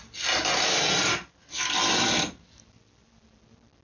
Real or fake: real